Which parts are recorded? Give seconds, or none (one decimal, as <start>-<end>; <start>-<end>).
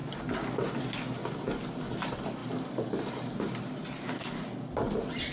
0.0-5.3